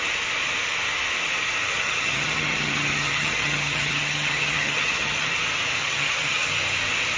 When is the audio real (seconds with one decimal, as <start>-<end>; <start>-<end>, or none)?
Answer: 0.0-1.7; 5.3-5.8; 6.5-7.2